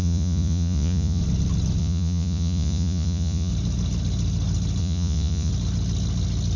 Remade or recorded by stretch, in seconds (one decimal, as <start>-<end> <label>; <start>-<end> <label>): 0.0-1.2 remade; 1.2-1.8 recorded; 1.8-3.5 remade; 3.5-4.8 recorded; 4.8-5.5 remade; 5.5-6.6 recorded